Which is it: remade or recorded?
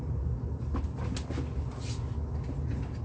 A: recorded